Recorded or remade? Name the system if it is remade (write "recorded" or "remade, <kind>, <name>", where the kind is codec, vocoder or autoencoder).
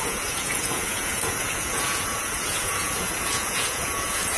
remade, vocoder, Vocos